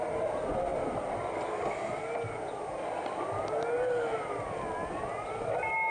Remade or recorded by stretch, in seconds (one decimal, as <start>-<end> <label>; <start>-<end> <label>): 0.0-5.9 recorded